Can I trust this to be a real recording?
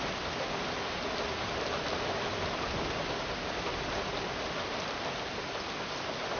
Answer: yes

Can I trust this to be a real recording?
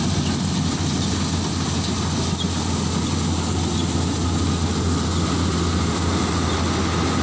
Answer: yes